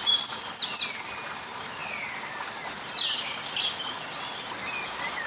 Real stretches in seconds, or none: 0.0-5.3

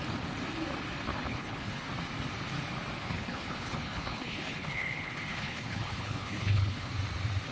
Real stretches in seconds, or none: 0.0-1.1; 1.9-3.0; 6.9-7.5